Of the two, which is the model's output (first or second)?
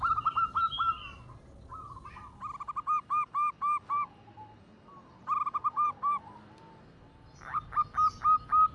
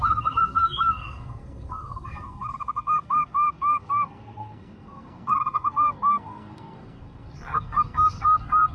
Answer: second